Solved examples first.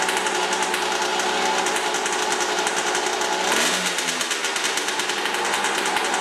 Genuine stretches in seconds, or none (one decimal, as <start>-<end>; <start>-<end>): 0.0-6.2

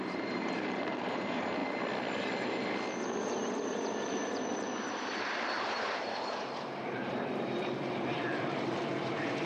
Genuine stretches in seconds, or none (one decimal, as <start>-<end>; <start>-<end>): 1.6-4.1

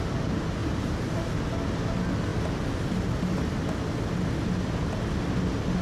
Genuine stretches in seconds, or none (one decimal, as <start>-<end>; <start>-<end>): 0.0-0.6; 1.3-5.8